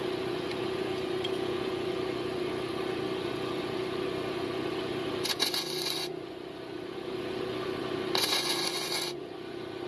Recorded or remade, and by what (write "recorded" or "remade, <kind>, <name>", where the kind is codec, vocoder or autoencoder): remade, vocoder, Vocos